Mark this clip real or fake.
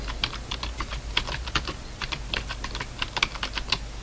real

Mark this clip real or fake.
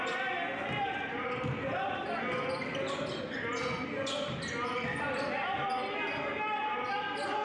real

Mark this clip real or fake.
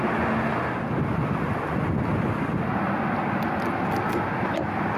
real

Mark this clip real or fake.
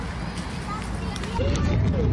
real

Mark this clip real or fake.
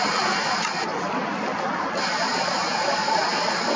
real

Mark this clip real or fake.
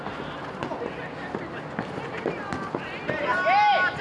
real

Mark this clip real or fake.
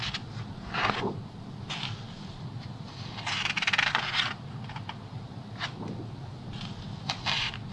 real